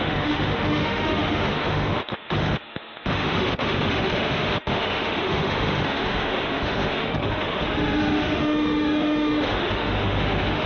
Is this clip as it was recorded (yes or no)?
no